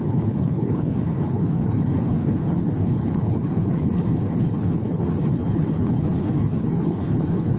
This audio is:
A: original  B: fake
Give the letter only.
B